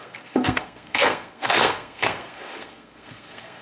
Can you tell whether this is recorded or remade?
remade